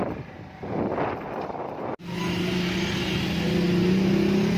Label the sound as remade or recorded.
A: recorded